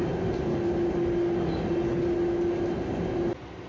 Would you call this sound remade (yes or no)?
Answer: no